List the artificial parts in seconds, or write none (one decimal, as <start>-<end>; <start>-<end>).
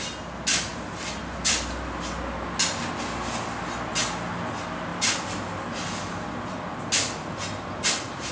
none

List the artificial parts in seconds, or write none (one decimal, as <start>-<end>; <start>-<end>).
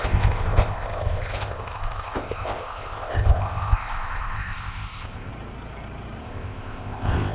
0.0-5.3; 6.2-7.3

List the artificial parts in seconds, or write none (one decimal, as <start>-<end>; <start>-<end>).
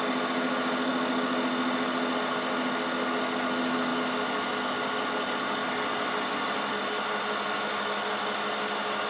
none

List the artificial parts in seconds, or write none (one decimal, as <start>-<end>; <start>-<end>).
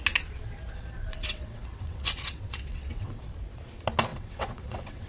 1.1-3.2; 4.1-5.1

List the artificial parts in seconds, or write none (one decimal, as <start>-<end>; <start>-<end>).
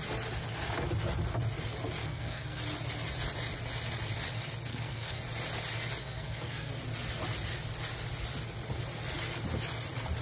2.0-2.6; 4.7-5.2; 6.0-6.7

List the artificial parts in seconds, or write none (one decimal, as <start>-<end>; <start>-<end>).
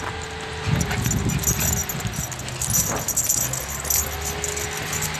none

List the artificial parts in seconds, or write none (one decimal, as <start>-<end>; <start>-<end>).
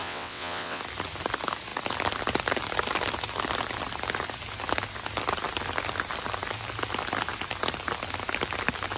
0.0-0.8